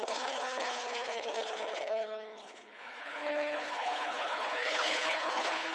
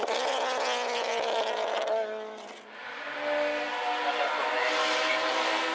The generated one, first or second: first